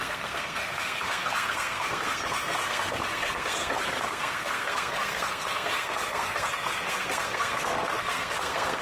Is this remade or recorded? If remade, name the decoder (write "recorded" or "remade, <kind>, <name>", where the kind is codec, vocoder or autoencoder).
remade, codec, SNAC